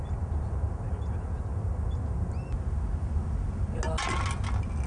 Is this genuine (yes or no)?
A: yes